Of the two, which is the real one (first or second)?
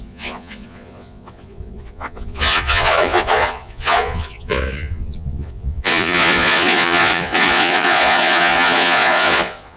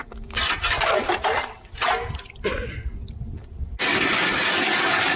second